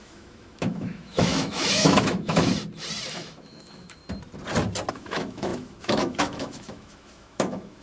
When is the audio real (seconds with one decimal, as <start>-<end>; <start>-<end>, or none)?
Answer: 2.5-3.1; 4.0-4.9